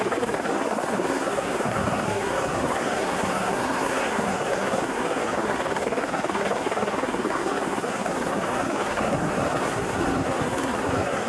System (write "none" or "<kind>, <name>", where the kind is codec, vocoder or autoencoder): codec, SNAC